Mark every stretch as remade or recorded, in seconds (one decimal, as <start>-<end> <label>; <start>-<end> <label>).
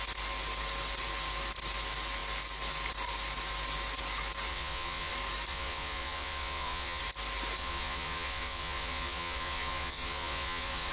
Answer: 0.0-4.5 recorded; 4.5-5.1 remade; 5.1-5.5 recorded; 5.5-7.0 remade; 7.0-7.6 recorded; 7.6-10.9 remade